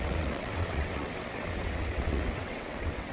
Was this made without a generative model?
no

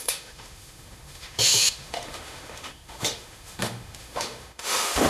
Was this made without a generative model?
no